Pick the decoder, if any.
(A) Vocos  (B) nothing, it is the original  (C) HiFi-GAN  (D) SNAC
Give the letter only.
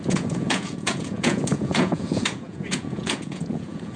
A